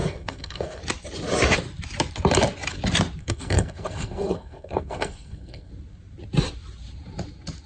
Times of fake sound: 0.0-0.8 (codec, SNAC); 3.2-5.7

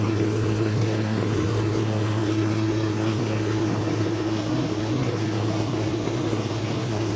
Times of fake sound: 0.0-7.2 (codec, SNAC)

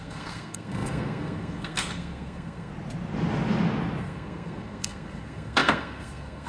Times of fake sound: 0.0-2.7 (codec, SNAC); 4.0-6.5

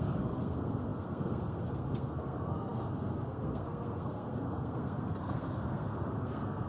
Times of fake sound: 0.0-6.7 (codec, SNAC)

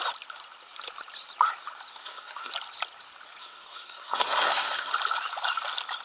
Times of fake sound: 2.0-2.5 (codec, SNAC); 3.4-4.9

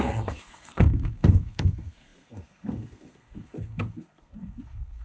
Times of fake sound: 0.0-5.0 (codec, SNAC)